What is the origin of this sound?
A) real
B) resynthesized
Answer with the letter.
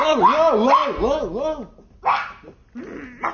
A